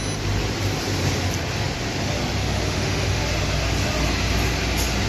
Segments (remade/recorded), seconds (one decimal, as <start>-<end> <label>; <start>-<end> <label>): 0.0-2.4 recorded; 2.4-3.2 remade; 3.2-5.1 recorded